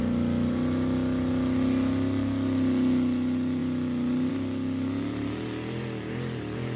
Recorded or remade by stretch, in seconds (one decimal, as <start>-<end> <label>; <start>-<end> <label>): 0.0-6.8 recorded